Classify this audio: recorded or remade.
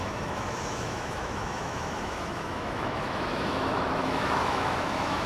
remade